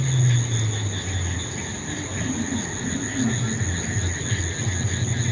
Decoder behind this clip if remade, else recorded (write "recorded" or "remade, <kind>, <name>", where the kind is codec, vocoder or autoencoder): recorded